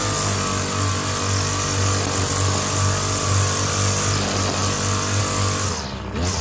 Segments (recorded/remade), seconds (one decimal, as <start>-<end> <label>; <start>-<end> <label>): 0.0-6.4 recorded